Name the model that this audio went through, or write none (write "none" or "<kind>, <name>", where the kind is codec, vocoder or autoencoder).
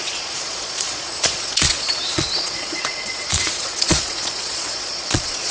vocoder, Vocos